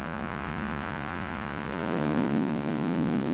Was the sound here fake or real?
fake